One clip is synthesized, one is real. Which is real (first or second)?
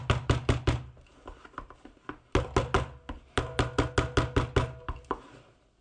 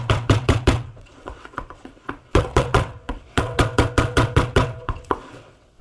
first